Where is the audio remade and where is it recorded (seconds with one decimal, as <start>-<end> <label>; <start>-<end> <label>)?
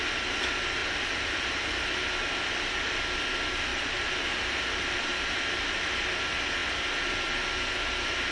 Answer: 0.0-0.8 recorded; 0.8-2.1 remade; 2.1-3.7 recorded; 3.7-5.8 remade; 5.8-8.3 recorded